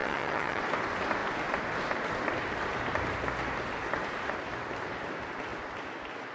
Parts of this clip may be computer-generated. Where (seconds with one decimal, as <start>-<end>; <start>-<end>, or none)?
0.0-0.6